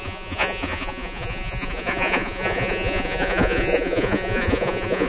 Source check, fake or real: fake